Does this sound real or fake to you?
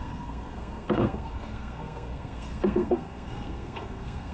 fake